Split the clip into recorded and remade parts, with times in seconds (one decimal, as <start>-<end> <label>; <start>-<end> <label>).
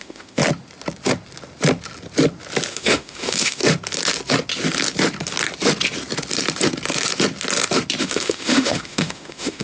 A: 0.0-0.4 remade; 0.4-2.7 recorded; 2.7-3.6 remade; 3.6-8.0 recorded; 8.0-9.6 remade